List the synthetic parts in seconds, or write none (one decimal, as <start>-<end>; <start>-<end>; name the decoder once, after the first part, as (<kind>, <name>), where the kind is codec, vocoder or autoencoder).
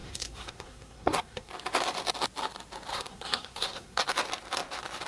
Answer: 0.0-1.5 (codec, SNAC); 2.9-4.0